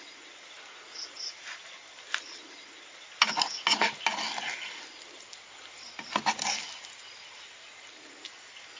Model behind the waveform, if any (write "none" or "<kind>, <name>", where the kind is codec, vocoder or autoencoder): none